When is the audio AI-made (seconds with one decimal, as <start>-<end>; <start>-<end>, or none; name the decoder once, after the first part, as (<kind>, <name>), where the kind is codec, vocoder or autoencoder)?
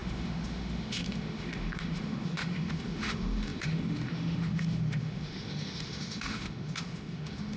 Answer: 0.0-7.6 (autoencoder, DAC-VAE)